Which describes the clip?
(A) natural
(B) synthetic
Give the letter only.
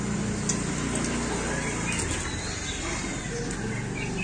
A